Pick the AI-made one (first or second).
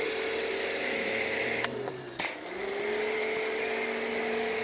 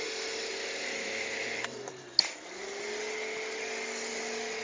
first